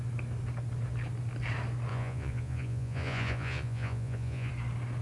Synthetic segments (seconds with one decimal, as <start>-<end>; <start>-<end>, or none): 1.9-4.5